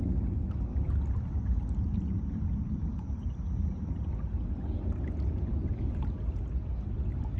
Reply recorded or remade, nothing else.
recorded